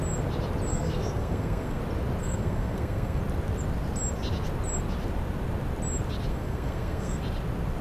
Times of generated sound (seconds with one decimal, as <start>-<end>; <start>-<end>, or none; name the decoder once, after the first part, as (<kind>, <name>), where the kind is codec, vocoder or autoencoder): 0.7-1.8 (codec, SNAC); 2.2-3.2; 6.3-7.2